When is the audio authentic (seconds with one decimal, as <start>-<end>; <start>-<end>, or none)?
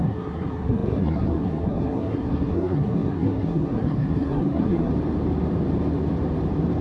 4.9-6.8